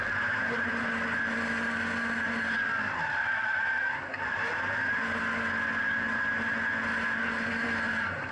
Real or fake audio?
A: real